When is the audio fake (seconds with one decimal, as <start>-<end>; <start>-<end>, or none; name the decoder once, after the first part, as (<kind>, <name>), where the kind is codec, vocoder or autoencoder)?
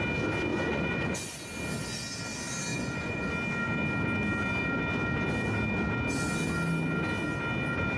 0.5-1.4 (vocoder, Vocos); 2.7-3.3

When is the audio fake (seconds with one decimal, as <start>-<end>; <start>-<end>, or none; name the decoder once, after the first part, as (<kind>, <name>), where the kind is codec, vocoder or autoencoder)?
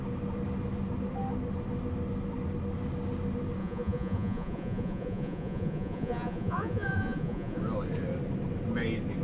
3.6-7.6 (vocoder, Vocos)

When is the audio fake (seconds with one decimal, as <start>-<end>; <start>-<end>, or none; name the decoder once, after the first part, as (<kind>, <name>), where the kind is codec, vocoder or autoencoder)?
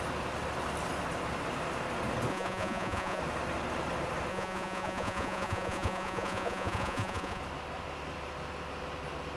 2.3-3.2 (vocoder, Vocos); 4.3-7.4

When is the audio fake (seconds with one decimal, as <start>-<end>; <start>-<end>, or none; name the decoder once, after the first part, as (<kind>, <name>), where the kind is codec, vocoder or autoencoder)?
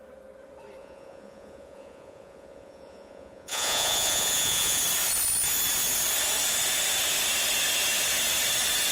0.8-4.8 (vocoder, Vocos)